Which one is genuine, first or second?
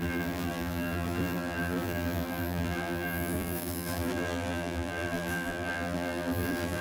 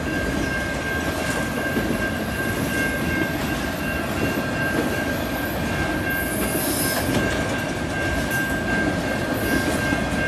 second